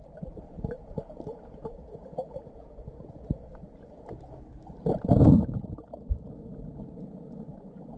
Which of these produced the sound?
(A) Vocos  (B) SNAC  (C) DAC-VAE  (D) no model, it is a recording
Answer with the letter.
D